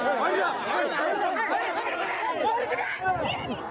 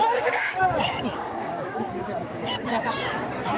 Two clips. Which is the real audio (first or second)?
first